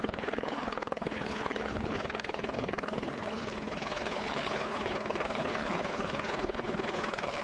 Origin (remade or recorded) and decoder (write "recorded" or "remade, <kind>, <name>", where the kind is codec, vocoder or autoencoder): remade, codec, HILCodec